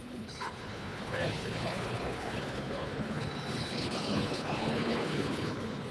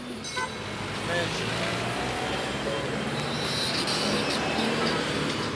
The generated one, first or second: first